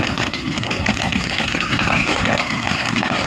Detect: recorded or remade remade